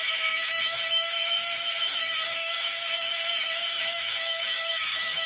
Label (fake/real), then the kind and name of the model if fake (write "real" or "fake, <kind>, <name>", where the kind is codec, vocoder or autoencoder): fake, autoencoder, DAC-VAE